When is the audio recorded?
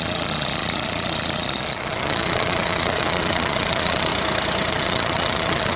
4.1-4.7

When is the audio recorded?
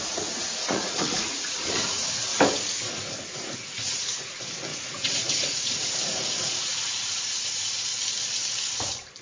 2.3-2.9; 7.9-9.2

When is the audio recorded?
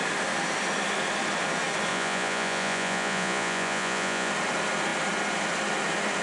0.0-1.9; 4.3-6.2